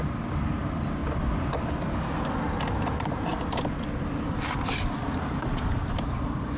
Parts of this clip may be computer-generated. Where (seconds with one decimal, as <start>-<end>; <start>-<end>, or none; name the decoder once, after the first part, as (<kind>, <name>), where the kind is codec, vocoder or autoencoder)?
0.0-1.0 (vocoder, BigVGAN v2); 2.9-3.3; 5.0-6.6